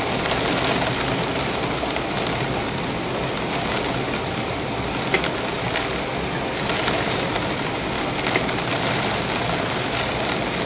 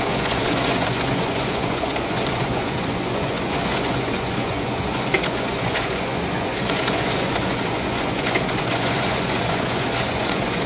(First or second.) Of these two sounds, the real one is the first